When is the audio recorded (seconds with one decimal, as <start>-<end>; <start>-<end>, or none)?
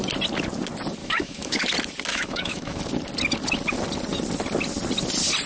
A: 0.0-1.0; 1.7-2.1; 2.8-5.5